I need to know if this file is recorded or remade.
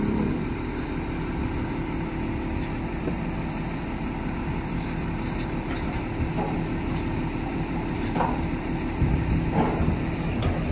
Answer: remade